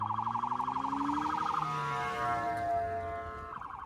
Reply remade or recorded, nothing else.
recorded